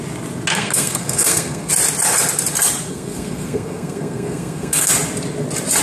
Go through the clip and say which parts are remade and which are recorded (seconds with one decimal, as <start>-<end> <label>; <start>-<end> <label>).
0.0-0.5 recorded; 0.5-1.7 remade; 1.7-2.9 recorded; 2.9-4.9 remade; 4.9-5.8 recorded